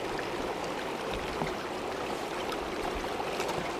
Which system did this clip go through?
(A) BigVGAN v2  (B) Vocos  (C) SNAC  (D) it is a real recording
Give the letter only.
A